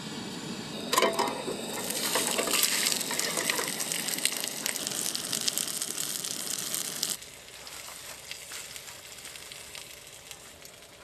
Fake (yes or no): no